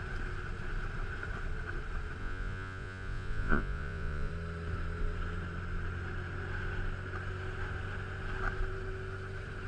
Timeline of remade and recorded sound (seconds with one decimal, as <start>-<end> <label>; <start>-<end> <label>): 0.0-2.2 recorded; 2.2-4.3 remade; 4.3-9.7 recorded